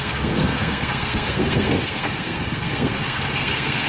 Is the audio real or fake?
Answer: fake